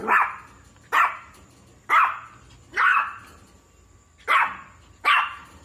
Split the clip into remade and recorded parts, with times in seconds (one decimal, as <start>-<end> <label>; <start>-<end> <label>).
0.0-2.5 remade; 2.5-2.9 recorded; 2.9-5.6 remade